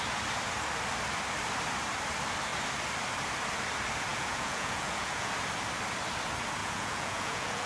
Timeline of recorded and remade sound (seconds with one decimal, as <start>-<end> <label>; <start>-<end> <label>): 0.0-4.1 recorded; 4.1-5.3 remade; 5.3-6.6 recorded; 6.6-7.7 remade